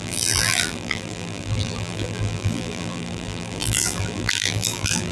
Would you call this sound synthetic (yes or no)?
yes